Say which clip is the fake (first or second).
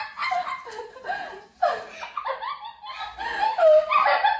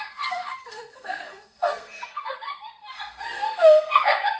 second